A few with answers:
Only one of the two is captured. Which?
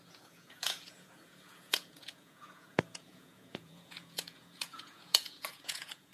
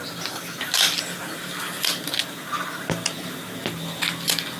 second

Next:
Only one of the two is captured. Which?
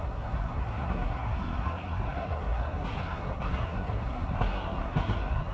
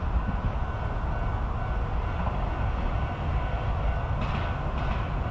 second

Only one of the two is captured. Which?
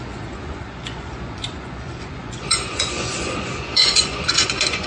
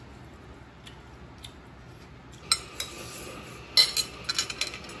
second